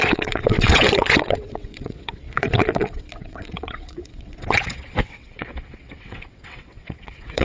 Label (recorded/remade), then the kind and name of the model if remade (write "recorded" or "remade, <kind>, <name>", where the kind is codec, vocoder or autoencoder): remade, vocoder, WaveNeXt